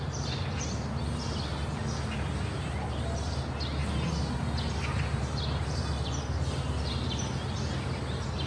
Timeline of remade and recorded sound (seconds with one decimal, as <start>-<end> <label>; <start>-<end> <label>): 0.0-8.5 recorded